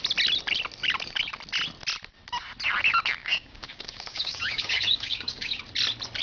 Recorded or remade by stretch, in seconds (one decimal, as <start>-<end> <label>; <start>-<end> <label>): 0.0-3.2 recorded; 3.2-5.6 remade; 5.6-6.2 recorded